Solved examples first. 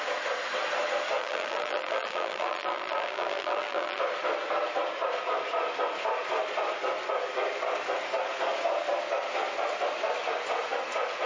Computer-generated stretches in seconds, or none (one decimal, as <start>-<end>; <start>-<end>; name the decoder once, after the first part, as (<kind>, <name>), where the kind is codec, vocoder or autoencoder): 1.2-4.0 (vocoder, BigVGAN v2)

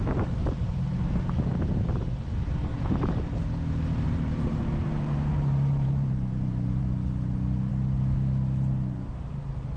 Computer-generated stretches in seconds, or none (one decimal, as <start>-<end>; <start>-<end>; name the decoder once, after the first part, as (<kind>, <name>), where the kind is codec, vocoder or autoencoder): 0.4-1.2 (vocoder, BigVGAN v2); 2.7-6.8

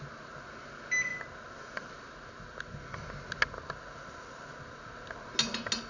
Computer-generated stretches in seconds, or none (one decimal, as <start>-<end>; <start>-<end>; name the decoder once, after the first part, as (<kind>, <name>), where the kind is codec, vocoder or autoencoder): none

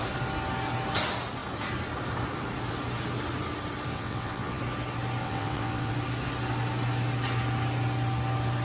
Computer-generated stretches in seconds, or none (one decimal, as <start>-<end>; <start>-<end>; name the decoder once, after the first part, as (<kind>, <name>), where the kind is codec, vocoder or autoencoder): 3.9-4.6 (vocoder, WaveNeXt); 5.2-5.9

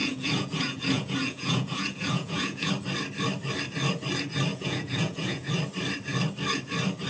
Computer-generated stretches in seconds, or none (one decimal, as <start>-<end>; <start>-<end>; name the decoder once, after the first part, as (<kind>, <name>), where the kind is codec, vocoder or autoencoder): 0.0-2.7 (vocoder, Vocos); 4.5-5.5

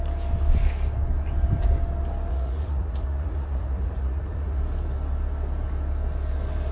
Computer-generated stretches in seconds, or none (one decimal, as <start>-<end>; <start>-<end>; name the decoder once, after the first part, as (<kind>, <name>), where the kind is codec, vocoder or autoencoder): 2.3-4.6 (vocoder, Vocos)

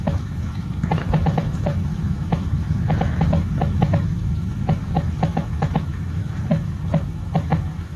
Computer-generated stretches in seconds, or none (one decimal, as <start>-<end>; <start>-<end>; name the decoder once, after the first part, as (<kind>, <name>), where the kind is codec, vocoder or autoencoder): 0.0-8.0 (autoencoder, DAC-VAE)